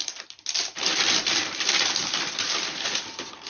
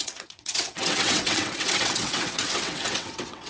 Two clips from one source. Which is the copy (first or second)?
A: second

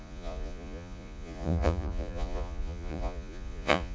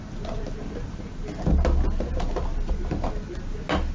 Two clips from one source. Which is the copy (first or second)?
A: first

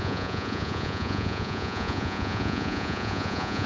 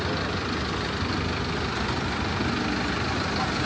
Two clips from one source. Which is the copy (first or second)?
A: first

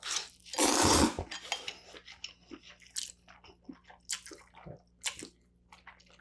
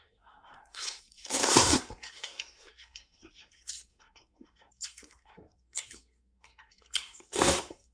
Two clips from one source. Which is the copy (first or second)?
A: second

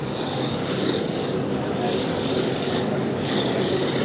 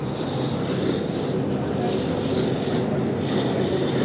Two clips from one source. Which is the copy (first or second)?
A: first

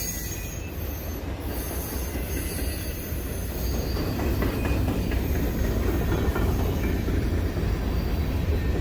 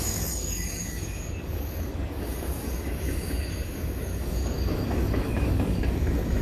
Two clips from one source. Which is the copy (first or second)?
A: second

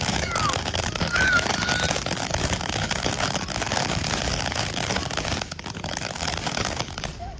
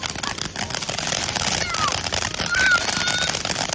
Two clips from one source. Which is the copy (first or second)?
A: first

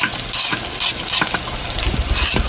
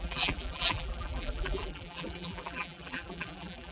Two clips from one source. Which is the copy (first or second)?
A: second